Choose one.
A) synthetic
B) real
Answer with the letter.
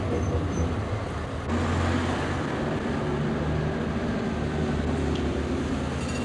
B